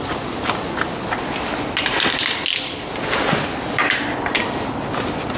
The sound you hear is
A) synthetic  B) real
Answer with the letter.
B